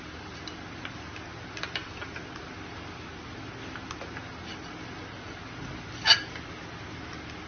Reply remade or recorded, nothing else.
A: recorded